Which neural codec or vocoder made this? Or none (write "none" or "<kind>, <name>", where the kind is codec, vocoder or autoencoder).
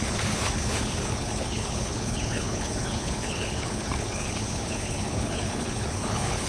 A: codec, HILCodec